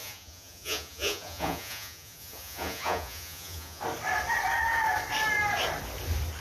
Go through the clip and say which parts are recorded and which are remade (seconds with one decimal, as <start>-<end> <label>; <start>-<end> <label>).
0.0-3.8 remade; 3.8-6.4 recorded